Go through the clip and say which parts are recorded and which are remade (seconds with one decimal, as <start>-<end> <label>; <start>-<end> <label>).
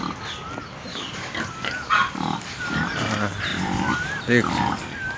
0.0-0.9 recorded; 0.9-2.6 remade; 2.6-5.2 recorded